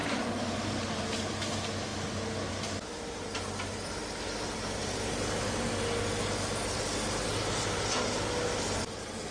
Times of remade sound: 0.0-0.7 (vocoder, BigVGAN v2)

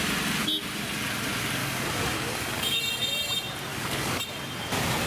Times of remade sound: 1.6-2.8 (codec, DAC); 3.7-4.2

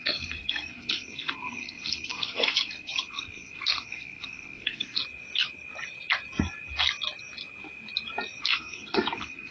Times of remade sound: 0.0-5.0 (codec, SNAC); 8.4-9.5

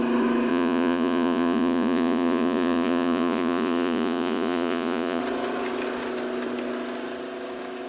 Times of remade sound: 0.5-5.2 (vocoder, Vocos)

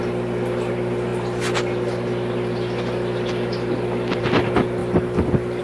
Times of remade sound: 0.0-5.6 (vocoder, BigVGAN v2)

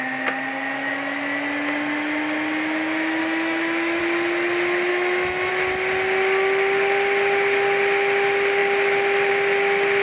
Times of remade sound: 3.2-4.0 (autoencoder, DAC-VAE); 4.9-5.5